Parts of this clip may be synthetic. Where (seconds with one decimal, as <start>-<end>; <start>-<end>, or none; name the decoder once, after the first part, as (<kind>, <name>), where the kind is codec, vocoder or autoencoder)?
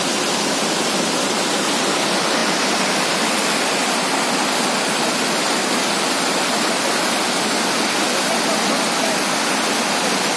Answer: none